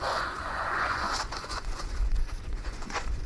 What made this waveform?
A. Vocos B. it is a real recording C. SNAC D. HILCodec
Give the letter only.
A